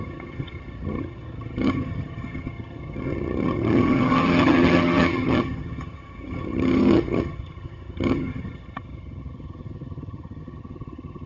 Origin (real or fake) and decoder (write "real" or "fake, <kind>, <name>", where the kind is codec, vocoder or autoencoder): fake, vocoder, HiFi-GAN